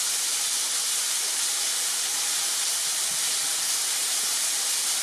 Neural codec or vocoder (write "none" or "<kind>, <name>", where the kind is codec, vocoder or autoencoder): none